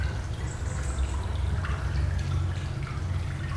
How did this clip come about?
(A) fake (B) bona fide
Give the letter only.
B